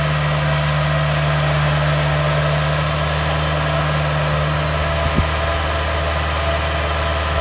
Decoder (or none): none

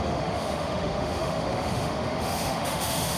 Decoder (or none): autoencoder, DAC-VAE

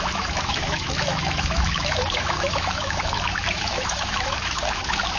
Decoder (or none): autoencoder, DAC-VAE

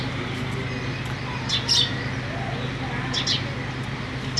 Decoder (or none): none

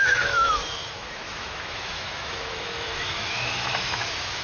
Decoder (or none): autoencoder, DAC-VAE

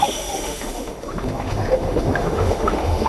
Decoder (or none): autoencoder, DAC-VAE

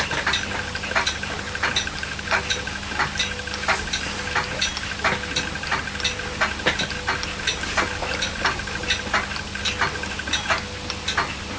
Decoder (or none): none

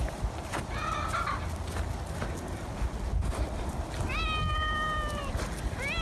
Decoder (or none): none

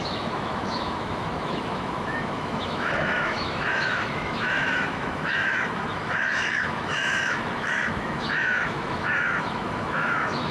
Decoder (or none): autoencoder, DAC-VAE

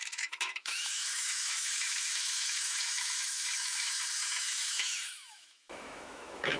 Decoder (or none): autoencoder, DAC-VAE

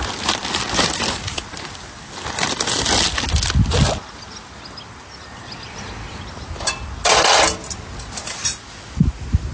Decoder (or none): none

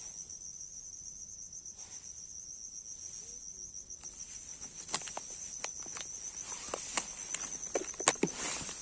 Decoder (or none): none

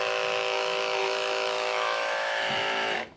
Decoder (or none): autoencoder, DAC-VAE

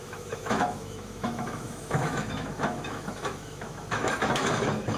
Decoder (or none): autoencoder, DAC-VAE